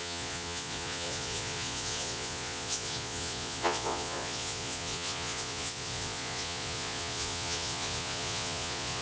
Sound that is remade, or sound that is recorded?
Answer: remade